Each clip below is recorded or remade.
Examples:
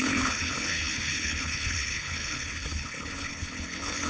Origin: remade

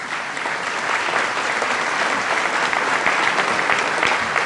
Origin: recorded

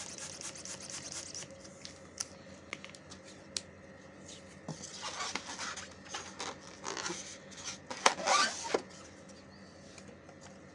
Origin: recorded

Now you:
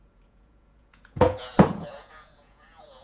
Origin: remade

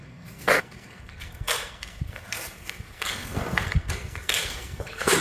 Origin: remade